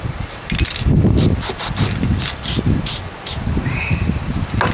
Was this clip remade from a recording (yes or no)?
no